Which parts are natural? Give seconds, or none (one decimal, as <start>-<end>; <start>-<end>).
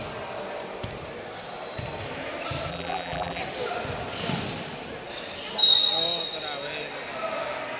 0.0-2.7; 3.4-7.8